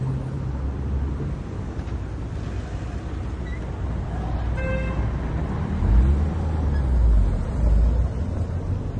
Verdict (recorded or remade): recorded